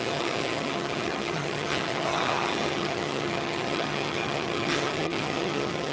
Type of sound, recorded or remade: remade